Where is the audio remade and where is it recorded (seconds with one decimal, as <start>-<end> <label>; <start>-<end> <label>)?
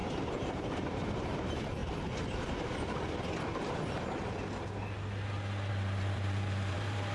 0.0-1.8 remade; 1.8-5.7 recorded; 5.7-7.1 remade